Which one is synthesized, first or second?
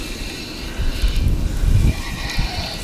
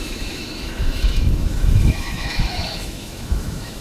second